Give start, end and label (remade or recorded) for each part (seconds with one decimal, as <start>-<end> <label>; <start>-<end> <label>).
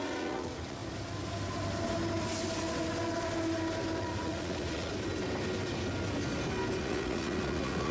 0.0-0.8 remade; 0.8-4.0 recorded; 4.0-4.9 remade; 4.9-6.8 recorded; 6.8-7.9 remade